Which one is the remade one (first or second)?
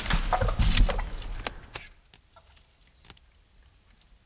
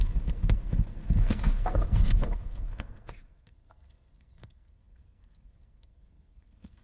second